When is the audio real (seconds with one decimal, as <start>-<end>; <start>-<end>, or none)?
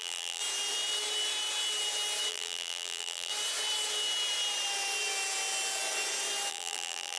0.4-2.3; 3.3-6.5